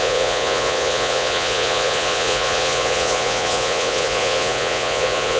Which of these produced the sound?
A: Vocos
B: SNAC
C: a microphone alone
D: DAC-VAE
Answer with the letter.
A